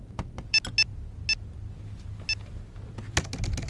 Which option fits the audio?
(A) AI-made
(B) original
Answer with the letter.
B